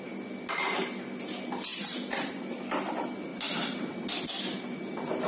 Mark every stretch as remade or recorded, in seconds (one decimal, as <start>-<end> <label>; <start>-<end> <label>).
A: 0.0-1.7 recorded; 1.7-2.9 remade; 2.9-3.3 recorded; 3.3-4.8 remade; 4.8-5.3 recorded